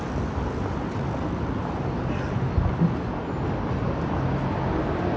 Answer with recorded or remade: recorded